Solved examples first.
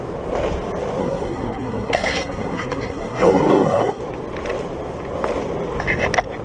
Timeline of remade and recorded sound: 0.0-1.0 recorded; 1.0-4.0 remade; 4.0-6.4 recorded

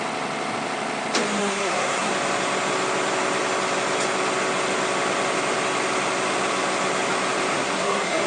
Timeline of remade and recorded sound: 0.0-1.4 recorded; 1.4-2.1 remade; 2.1-7.5 recorded; 7.5-8.3 remade

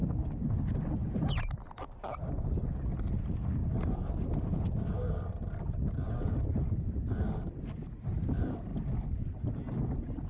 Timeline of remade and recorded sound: 0.0-10.3 recorded

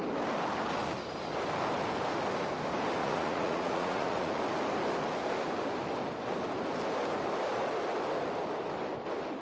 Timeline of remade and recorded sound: 0.0-3.0 recorded; 3.0-4.4 remade; 4.4-9.4 recorded

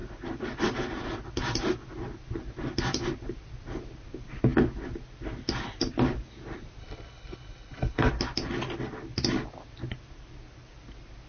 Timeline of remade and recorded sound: 0.0-6.8 recorded; 6.8-8.1 remade; 8.1-11.3 recorded

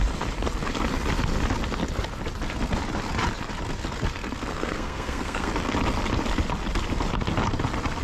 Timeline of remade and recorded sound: 0.0-4.5 recorded; 4.5-5.5 remade; 5.5-8.0 recorded

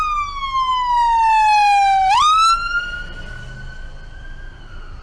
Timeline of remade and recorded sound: 0.0-5.0 recorded